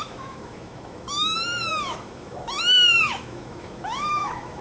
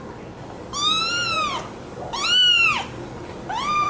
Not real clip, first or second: first